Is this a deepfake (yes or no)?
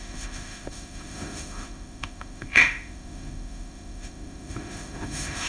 yes